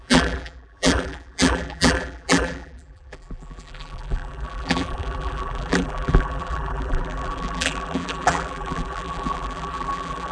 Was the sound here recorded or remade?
remade